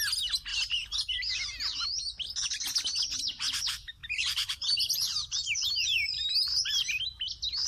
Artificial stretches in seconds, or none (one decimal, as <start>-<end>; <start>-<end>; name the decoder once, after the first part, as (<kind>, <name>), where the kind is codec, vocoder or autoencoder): 0.5-1.2 (vocoder, BigVGAN v2); 4.0-7.0